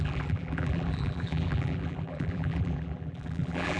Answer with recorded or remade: remade